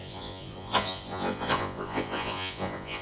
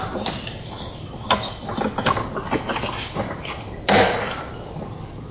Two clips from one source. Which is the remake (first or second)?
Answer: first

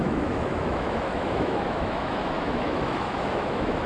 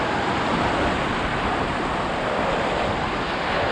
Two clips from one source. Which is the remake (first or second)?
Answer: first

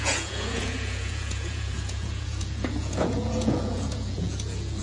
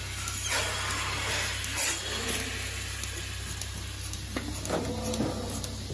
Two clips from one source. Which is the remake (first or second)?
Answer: first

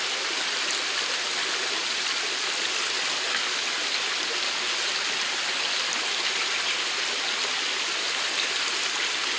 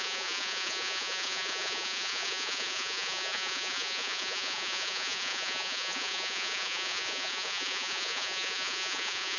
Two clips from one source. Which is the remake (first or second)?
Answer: second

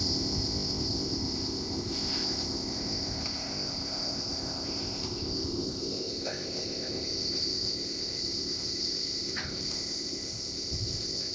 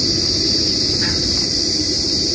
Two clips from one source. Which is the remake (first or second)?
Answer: first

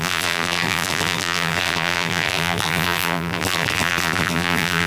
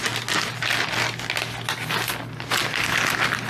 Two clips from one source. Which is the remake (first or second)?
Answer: first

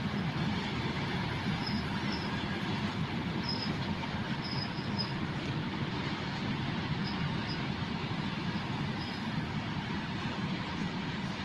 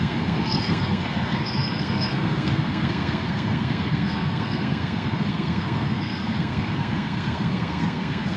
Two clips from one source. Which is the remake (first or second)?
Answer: second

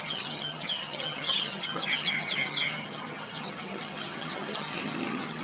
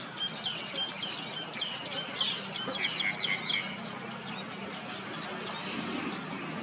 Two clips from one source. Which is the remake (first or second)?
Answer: first